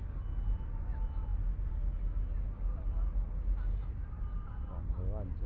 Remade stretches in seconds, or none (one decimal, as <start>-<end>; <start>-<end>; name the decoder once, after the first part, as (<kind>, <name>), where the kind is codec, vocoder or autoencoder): none